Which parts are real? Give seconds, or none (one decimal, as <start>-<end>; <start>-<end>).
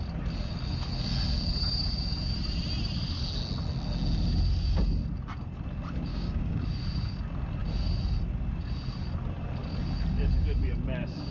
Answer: 0.0-6.1; 6.7-11.3